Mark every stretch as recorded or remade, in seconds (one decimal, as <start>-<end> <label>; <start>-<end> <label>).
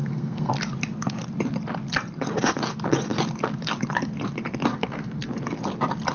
0.0-0.5 remade; 0.5-4.7 recorded; 4.7-5.3 remade; 5.3-6.1 recorded